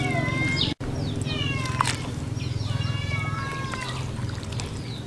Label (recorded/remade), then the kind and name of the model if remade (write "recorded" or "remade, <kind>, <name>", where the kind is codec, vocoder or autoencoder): recorded